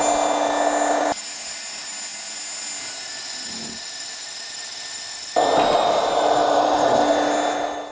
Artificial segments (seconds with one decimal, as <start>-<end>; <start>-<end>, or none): 4.2-7.1